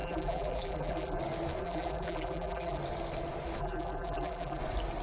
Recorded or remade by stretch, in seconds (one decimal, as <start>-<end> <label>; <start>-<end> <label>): 0.0-1.2 remade; 1.2-1.6 recorded; 1.6-2.8 remade; 2.8-3.6 recorded; 3.6-4.6 remade; 4.6-5.0 recorded